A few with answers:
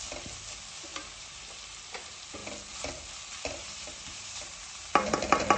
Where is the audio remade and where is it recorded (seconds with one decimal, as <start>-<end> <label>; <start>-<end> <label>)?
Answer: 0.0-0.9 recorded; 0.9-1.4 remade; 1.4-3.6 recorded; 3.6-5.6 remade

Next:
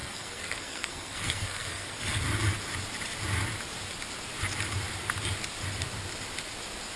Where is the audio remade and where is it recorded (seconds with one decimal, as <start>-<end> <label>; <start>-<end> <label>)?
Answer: 0.0-2.0 remade; 2.0-7.0 recorded

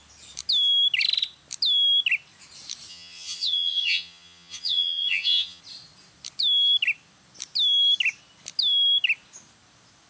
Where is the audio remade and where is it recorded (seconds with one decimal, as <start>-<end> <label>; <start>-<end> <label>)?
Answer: 0.0-2.9 recorded; 2.9-5.6 remade; 5.6-10.1 recorded

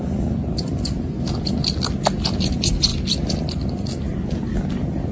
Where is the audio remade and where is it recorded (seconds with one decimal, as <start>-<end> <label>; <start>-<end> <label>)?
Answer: 0.0-5.1 recorded